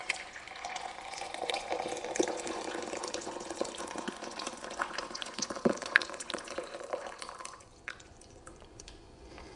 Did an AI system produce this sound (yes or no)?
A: yes